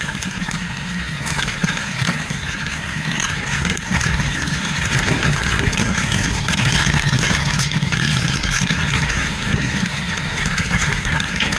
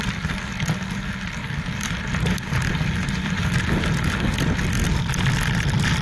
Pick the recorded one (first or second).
second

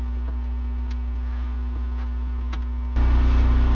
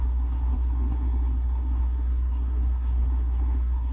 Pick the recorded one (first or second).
first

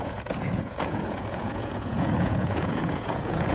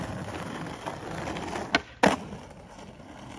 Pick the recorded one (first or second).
second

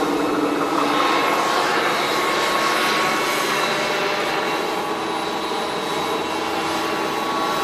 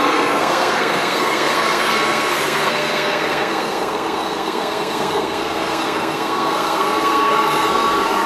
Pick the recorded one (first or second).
first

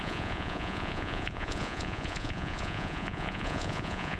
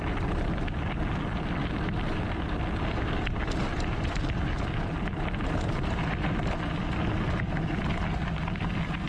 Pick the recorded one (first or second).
second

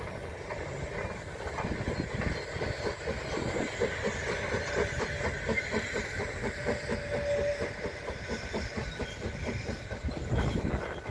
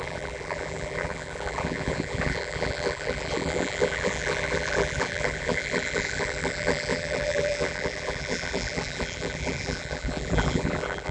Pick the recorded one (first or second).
first